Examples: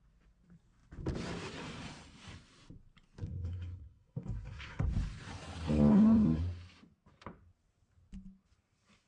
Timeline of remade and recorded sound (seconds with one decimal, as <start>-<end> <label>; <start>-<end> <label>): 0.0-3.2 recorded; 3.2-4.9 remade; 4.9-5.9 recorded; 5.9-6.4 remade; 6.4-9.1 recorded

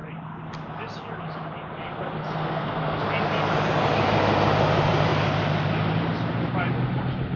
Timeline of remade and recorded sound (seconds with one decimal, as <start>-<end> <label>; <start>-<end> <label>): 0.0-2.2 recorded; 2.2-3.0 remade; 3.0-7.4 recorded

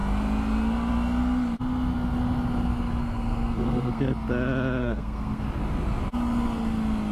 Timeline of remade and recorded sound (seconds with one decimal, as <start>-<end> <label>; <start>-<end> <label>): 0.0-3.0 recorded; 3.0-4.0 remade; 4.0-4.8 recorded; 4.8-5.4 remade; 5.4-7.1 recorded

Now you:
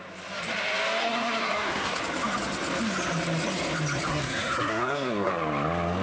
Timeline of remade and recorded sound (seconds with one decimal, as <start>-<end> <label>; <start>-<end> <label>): 0.0-1.0 recorded; 1.0-2.0 remade; 2.0-4.1 recorded; 4.1-5.3 remade; 5.3-6.0 recorded

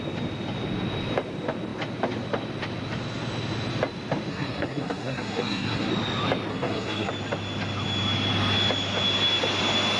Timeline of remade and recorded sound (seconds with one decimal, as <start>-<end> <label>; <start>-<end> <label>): 0.0-4.3 recorded; 4.3-5.9 remade; 5.9-6.5 recorded; 6.5-7.1 remade; 7.1-10.0 recorded

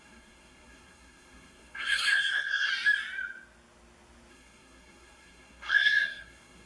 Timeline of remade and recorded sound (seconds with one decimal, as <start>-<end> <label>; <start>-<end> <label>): 0.0-2.7 remade; 2.7-4.3 recorded; 4.3-6.7 remade

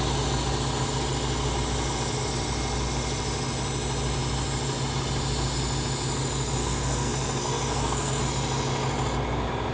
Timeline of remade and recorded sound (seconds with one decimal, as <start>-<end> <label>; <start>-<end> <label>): 0.0-6.6 recorded; 6.6-8.2 remade; 8.2-9.7 recorded

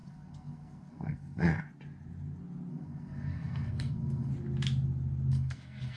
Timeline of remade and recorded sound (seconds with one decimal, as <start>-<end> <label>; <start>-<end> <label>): 0.0-1.5 remade; 1.5-2.7 recorded; 2.7-4.3 remade; 4.3-5.3 recorded; 5.3-6.0 remade